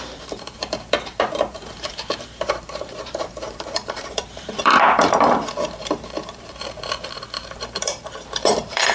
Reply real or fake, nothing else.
fake